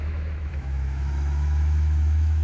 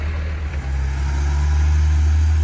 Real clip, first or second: second